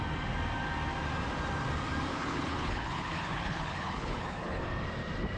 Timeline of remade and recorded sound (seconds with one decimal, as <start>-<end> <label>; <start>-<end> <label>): 0.0-2.1 recorded; 2.1-4.6 remade; 4.6-5.4 recorded